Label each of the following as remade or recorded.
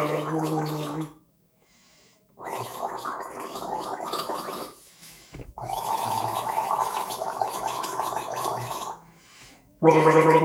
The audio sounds remade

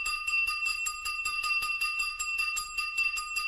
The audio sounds remade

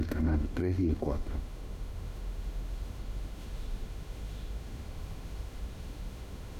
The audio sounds remade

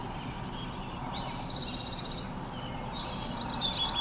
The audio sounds recorded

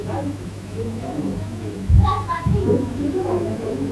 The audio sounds remade